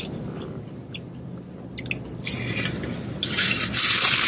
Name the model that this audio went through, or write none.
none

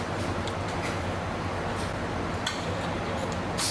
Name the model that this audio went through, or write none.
none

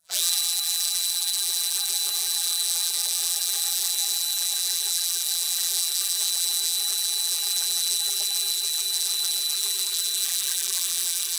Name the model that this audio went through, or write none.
vocoder, BigVGAN v2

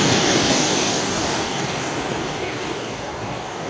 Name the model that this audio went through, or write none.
codec, DAC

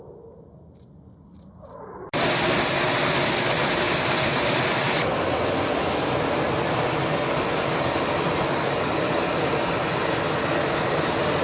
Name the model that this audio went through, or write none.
none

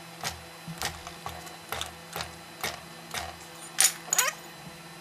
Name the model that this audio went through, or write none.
none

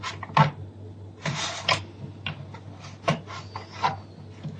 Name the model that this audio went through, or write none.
none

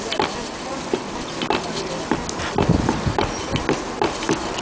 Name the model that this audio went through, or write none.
none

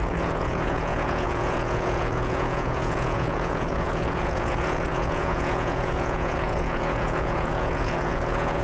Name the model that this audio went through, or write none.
vocoder, Vocos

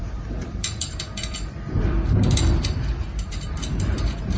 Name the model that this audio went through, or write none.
vocoder, BigVGAN v2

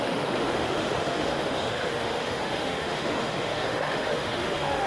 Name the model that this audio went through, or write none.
autoencoder, DAC-VAE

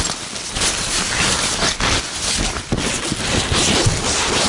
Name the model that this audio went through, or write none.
none